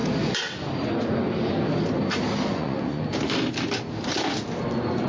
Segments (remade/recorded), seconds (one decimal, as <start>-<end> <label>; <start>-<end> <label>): 0.0-2.5 recorded; 2.5-3.0 remade; 3.0-5.1 recorded